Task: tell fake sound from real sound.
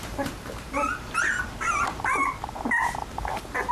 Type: fake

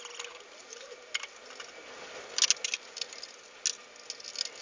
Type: real